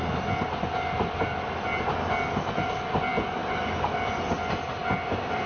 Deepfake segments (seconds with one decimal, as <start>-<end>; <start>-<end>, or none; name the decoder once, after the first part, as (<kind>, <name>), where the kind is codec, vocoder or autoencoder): none